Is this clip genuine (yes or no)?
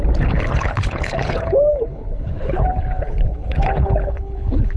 no